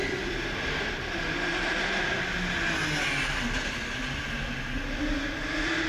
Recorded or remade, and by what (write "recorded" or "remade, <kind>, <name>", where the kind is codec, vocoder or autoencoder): recorded